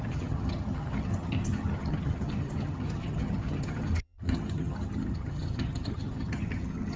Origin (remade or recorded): remade